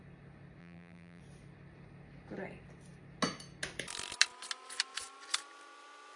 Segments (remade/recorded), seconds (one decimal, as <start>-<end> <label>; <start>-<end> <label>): 0.0-0.6 recorded; 0.6-1.2 remade; 1.2-6.2 recorded